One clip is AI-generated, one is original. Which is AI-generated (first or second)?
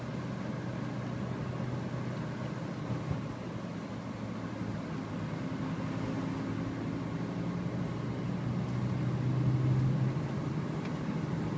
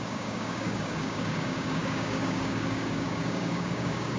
second